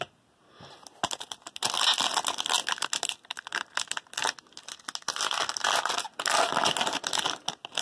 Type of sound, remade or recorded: recorded